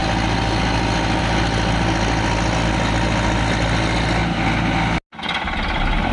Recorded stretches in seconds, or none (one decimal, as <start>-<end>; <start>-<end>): 0.0-6.1